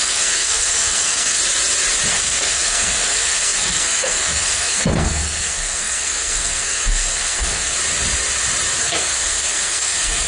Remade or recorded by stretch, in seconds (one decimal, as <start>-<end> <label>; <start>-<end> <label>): 0.0-1.4 remade; 1.4-2.1 recorded; 2.1-7.8 remade; 7.8-8.8 recorded; 8.8-10.3 remade